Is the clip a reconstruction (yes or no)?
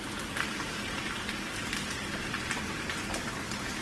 no